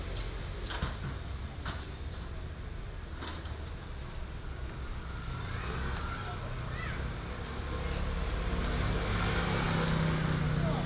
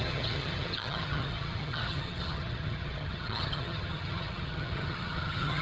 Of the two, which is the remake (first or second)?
second